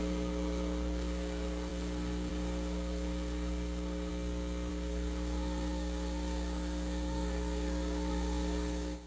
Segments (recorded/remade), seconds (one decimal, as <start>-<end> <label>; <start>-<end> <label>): 0.0-4.1 remade; 4.1-4.7 recorded; 4.7-9.1 remade